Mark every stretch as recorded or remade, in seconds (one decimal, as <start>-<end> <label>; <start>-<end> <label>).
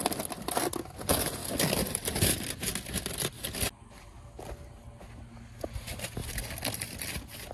0.0-7.5 recorded